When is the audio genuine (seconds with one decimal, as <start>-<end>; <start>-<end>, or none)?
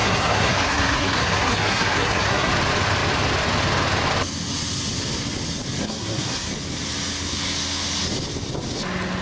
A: 2.5-5.8; 6.5-9.2